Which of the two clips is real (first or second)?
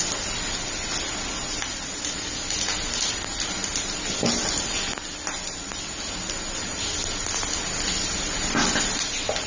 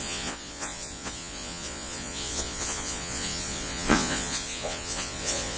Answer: first